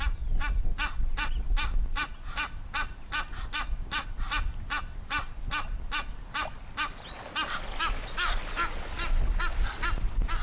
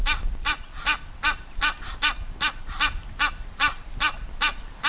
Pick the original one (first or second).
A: first